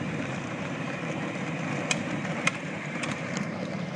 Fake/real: fake